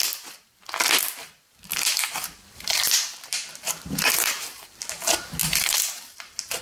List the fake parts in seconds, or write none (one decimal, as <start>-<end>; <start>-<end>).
1.7-4.9; 5.4-6.6

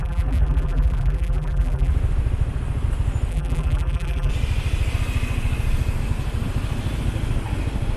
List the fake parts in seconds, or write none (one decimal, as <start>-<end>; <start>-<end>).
0.0-1.9; 3.3-4.3

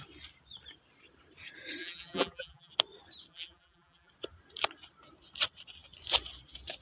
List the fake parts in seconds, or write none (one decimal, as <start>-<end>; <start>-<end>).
1.8-2.7; 3.3-4.1